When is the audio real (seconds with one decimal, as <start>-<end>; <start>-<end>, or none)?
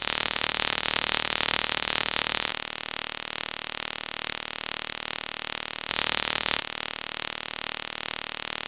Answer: 2.5-5.9; 6.6-8.7